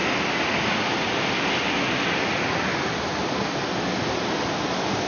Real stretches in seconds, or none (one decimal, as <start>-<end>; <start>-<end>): 0.0-5.1